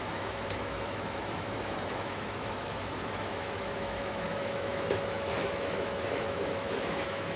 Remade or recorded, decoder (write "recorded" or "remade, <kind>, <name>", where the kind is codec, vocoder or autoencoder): remade, autoencoder, DAC-VAE